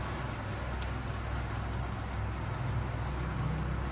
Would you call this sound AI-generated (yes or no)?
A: no